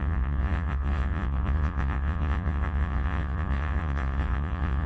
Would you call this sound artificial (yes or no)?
yes